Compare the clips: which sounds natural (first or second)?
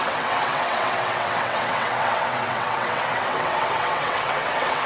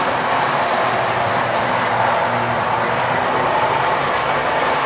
second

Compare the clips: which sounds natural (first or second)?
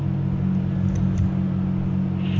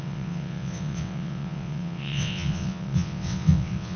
first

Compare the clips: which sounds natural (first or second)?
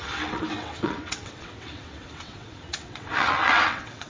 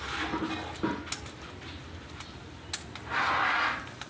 second